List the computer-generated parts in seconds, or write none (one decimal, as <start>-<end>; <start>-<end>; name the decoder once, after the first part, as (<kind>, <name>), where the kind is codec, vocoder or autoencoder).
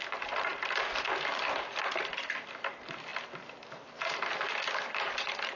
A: none